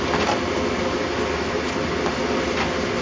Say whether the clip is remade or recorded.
recorded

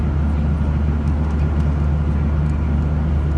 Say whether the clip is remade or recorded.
recorded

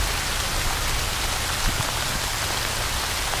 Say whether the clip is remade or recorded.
recorded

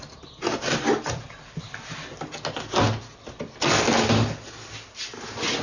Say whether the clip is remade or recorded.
recorded